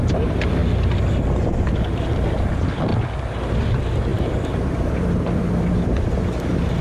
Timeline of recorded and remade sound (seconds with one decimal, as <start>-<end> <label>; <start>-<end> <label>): 0.0-0.6 remade; 0.6-2.1 recorded; 2.1-2.9 remade; 2.9-3.5 recorded; 3.5-6.8 remade